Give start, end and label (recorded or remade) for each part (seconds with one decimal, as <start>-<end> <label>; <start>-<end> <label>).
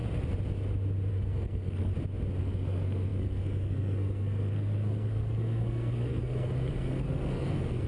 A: 0.0-1.1 recorded; 1.1-1.9 remade; 1.9-2.4 recorded; 2.4-7.9 remade